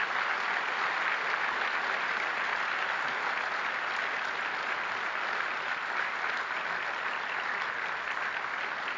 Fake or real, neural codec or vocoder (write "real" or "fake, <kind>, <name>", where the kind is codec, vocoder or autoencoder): real